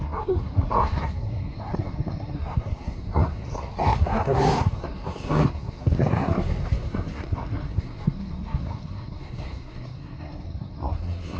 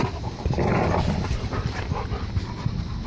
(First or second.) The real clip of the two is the second